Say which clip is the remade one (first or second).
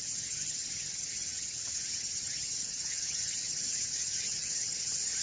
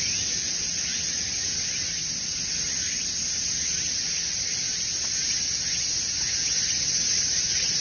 first